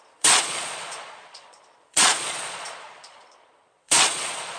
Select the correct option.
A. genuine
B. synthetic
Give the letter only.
B